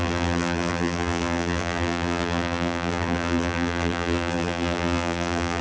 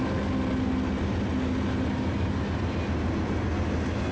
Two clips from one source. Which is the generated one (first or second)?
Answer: first